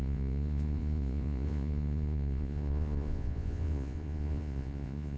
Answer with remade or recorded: remade